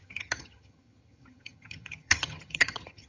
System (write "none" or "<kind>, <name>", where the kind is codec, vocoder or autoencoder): vocoder, HiFi-GAN